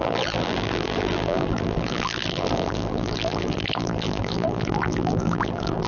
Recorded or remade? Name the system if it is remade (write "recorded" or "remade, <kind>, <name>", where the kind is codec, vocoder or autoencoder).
remade, vocoder, BigVGAN v2